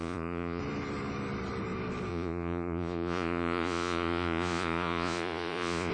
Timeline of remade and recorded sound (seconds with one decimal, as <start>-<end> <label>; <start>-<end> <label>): 0.0-0.6 remade; 0.6-2.1 recorded; 2.1-5.9 remade